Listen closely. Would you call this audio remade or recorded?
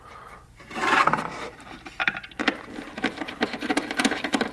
remade